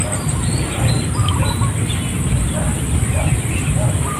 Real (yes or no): yes